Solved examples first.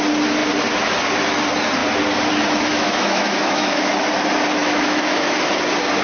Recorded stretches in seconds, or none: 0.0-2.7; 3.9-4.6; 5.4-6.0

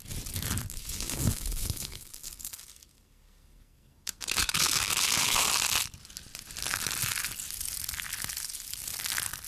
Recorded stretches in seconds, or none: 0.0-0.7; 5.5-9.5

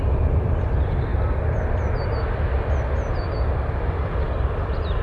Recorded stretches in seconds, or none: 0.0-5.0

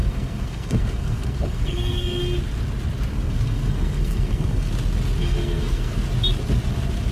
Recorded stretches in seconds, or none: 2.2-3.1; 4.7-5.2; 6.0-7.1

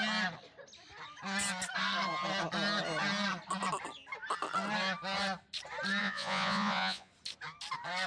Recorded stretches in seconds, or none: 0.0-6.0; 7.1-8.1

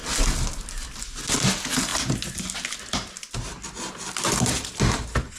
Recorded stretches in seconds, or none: 0.0-5.4